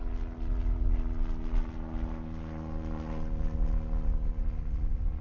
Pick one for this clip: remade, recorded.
recorded